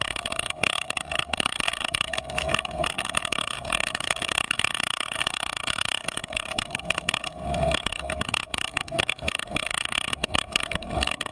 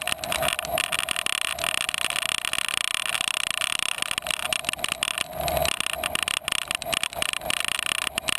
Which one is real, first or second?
second